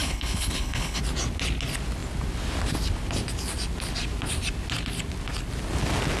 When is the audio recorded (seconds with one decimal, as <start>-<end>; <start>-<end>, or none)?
1.0-6.2